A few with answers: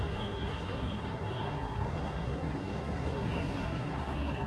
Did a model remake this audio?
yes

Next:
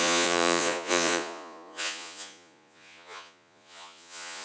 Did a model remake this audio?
yes